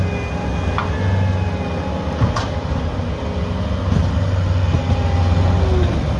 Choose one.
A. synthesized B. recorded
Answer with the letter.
B